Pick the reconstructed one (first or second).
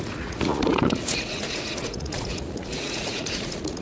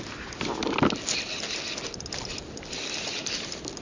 first